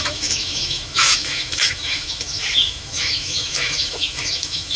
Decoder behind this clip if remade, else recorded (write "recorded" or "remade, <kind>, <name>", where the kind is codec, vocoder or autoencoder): remade, autoencoder, DAC-VAE